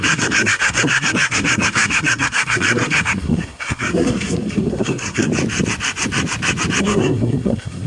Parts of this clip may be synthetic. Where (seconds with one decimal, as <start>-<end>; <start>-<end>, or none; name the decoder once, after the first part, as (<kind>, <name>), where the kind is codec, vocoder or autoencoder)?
0.0-5.3 (codec, SNAC); 6.8-7.9